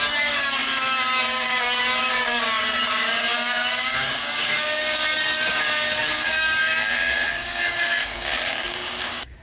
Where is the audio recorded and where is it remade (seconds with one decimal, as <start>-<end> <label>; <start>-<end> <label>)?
0.0-9.4 remade